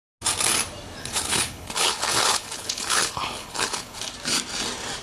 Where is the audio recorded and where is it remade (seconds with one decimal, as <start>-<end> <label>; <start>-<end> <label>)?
0.0-1.0 recorded; 1.0-4.0 remade; 4.0-5.0 recorded